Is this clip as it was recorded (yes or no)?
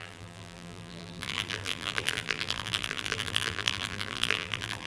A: no